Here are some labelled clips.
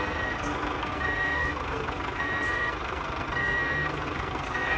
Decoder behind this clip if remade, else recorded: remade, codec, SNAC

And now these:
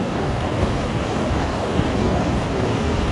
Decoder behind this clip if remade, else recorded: remade, codec, DAC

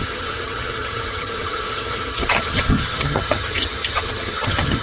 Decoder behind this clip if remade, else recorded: remade, vocoder, HiFi-GAN